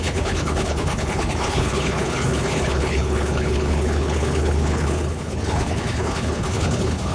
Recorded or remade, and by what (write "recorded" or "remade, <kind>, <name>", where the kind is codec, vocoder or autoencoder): remade, codec, HILCodec